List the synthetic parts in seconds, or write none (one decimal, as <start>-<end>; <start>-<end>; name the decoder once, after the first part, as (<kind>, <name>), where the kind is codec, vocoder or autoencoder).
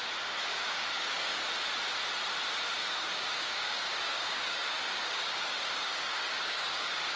0.5-1.4 (codec, DAC); 2.8-7.2